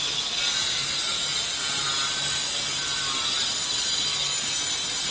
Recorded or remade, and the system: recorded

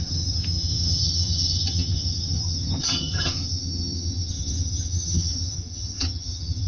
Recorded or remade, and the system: remade, vocoder, HiFi-GAN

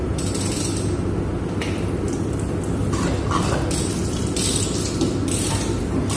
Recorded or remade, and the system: recorded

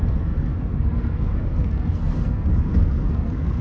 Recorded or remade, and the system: remade, codec, SNAC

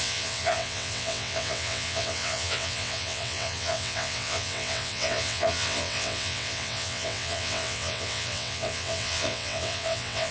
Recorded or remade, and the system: remade, vocoder, WaveNeXt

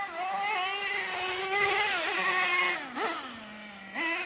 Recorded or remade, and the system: recorded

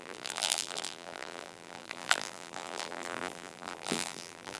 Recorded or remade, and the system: remade, vocoder, BigVGAN v2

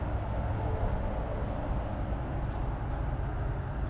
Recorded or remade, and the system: recorded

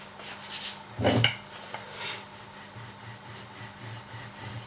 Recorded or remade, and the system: recorded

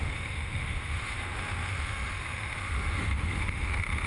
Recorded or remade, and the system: remade, autoencoder, DAC-VAE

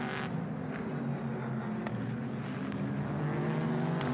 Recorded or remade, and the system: recorded